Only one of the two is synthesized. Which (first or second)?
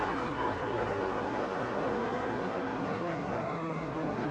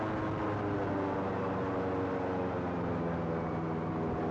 first